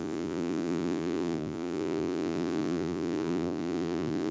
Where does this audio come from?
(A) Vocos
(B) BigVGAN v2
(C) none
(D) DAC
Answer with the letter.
A